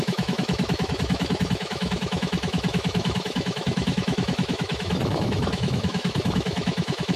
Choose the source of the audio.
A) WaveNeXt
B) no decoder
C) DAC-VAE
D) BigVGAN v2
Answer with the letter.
C